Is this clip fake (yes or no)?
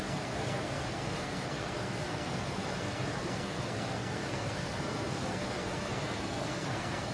yes